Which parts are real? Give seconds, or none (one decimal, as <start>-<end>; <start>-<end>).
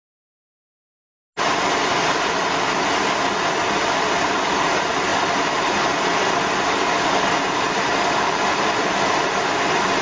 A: 0.0-10.0